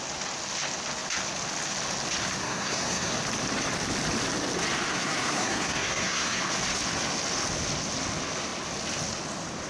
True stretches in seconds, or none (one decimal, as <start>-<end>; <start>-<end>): 0.0-2.4; 3.1-4.9; 6.4-9.7